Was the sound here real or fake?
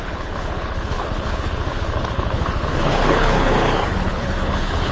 fake